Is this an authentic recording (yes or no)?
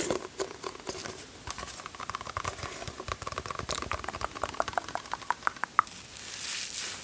yes